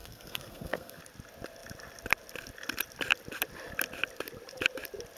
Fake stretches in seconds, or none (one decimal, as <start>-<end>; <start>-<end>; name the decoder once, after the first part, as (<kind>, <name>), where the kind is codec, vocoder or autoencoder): 0.0-1.0 (codec, SNAC)